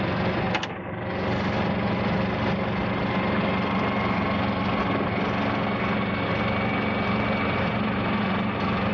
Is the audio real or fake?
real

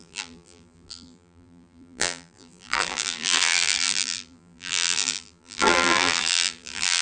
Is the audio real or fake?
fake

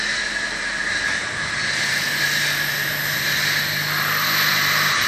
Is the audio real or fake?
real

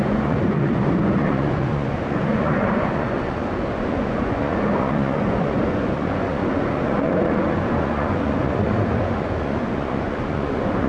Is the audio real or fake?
fake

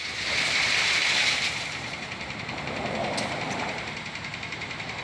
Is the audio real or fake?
fake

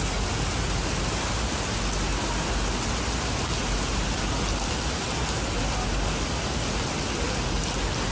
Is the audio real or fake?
real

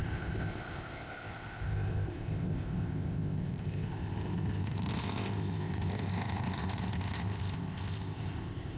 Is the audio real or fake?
fake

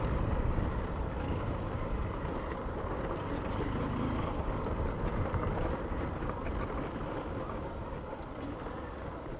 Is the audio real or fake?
real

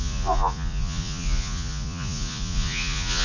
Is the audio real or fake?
fake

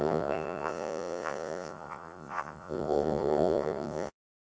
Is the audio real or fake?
fake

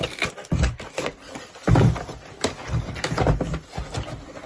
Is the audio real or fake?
real